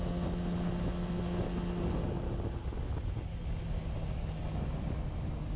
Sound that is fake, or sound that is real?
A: real